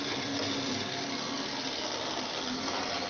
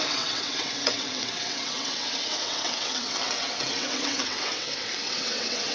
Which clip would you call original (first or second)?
first